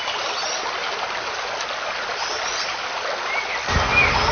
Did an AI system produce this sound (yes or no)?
no